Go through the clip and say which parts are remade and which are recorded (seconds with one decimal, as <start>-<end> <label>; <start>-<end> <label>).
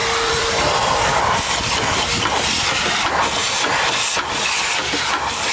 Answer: 0.0-1.2 remade; 1.2-3.4 recorded; 3.4-5.5 remade